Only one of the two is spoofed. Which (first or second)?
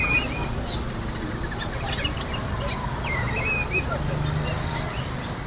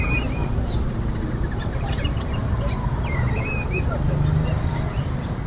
second